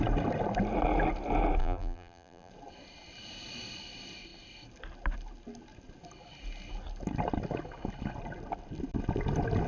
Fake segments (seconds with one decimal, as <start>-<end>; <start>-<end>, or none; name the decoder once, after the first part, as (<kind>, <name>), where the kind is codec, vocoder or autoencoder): 1.6-2.5 (vocoder, BigVGAN v2)